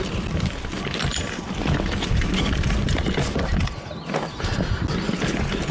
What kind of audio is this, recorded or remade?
recorded